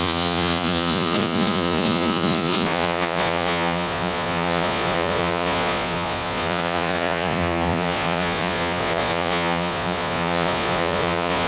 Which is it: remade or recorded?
remade